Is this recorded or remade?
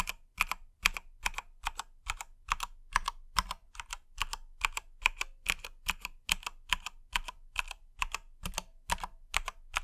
recorded